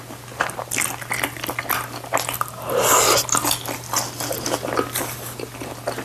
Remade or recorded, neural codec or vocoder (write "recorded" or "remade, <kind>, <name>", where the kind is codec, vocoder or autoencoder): recorded